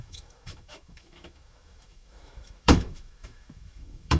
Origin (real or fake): fake